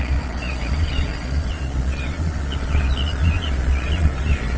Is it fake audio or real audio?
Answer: fake